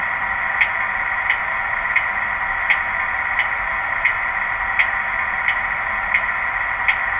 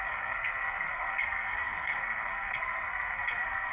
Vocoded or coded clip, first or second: second